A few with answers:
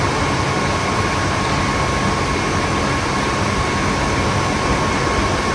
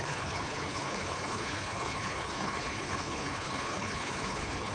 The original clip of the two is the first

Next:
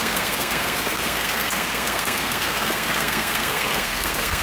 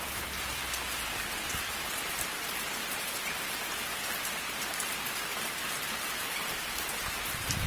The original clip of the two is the second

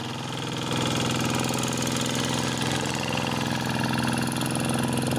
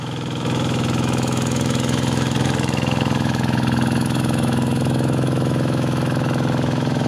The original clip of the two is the first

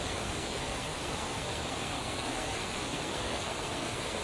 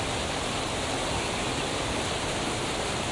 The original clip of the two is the second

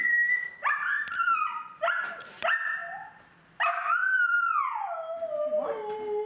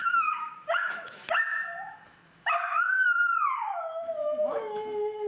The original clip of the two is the first